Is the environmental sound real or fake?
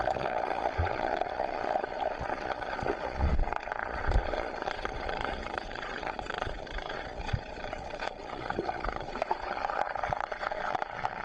fake